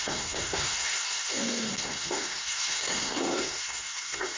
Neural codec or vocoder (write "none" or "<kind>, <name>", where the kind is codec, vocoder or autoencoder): codec, SNAC